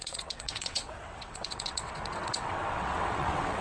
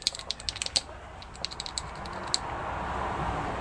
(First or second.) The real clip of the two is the second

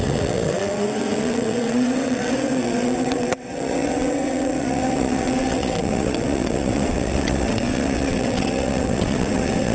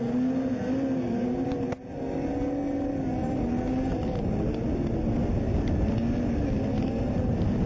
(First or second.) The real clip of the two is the second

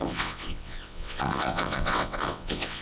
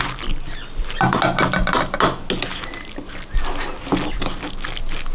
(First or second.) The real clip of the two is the second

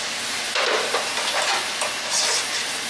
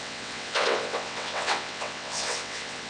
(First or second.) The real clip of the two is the first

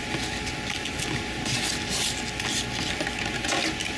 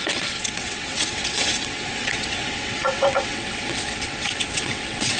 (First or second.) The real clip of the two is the first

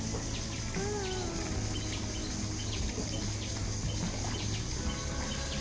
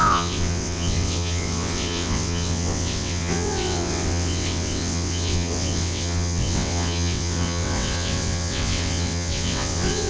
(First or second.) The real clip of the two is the first